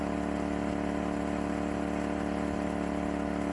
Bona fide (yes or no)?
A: yes